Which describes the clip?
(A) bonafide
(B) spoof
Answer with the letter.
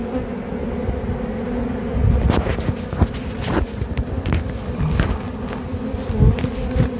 A